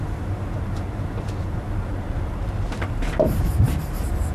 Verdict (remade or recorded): remade